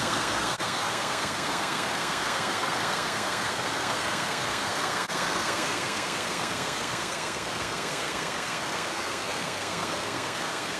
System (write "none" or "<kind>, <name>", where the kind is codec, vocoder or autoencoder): codec, SNAC